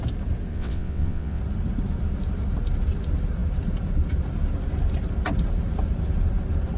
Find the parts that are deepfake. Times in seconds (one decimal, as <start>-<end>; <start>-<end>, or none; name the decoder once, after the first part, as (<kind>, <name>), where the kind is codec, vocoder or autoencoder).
0.5-1.4 (vocoder, WaveNeXt)